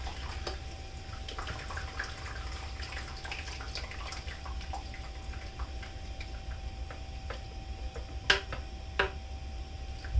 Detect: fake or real real